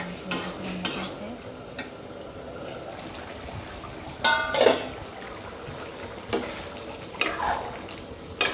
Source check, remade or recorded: recorded